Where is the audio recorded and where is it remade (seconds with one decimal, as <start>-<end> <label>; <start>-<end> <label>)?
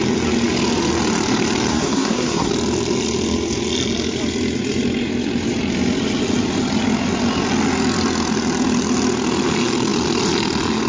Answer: 0.0-1.7 recorded; 1.7-2.5 remade; 2.5-10.9 recorded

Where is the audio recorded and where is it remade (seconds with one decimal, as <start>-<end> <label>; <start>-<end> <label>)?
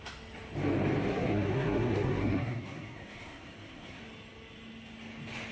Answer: 0.0-1.1 recorded; 1.1-4.0 remade; 4.0-5.5 recorded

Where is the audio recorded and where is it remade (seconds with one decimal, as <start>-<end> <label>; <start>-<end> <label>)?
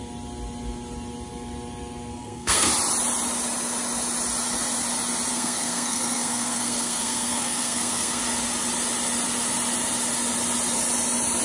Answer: 0.0-2.1 recorded; 2.1-2.7 remade; 2.7-5.3 recorded; 5.3-8.2 remade; 8.2-11.4 recorded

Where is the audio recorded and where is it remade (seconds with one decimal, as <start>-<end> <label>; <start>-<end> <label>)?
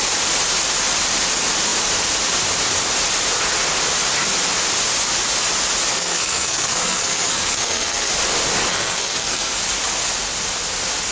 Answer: 0.0-5.9 recorded; 5.9-8.1 remade; 8.1-8.7 recorded; 8.7-9.6 remade; 9.6-11.1 recorded